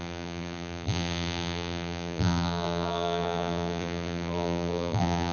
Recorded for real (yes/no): no